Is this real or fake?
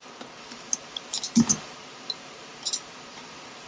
real